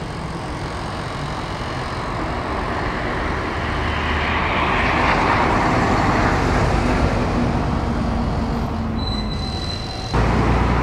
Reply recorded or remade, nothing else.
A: recorded